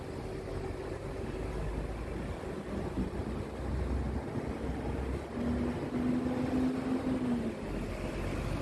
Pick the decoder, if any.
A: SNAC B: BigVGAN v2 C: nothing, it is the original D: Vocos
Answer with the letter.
C